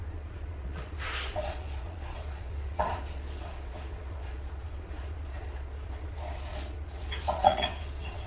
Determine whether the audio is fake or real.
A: fake